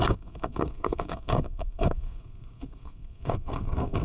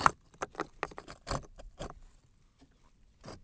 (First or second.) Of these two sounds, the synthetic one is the first